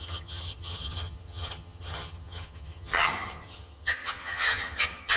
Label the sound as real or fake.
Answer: fake